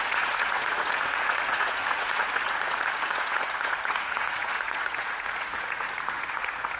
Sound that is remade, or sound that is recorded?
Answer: remade